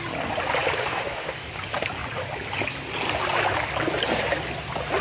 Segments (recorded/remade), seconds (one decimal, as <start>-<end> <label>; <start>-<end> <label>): 0.0-0.9 recorded; 0.9-1.5 remade; 1.5-5.0 recorded